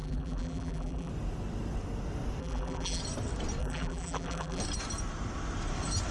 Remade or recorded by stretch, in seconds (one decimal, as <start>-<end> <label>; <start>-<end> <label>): 0.0-1.1 remade; 1.1-2.4 recorded; 2.4-3.0 remade; 3.0-3.6 recorded; 3.6-4.6 remade; 4.6-6.1 recorded